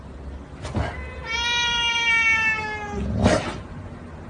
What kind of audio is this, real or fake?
real